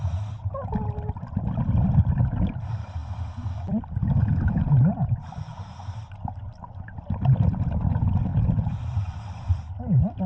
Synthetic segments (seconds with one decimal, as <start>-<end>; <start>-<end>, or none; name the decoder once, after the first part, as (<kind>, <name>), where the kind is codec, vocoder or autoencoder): 8.3-9.7 (vocoder, BigVGAN v2)